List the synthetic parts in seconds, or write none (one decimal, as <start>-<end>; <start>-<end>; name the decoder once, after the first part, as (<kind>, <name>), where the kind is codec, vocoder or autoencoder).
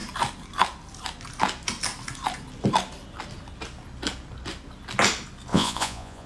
5.5-6.3 (vocoder, Vocos)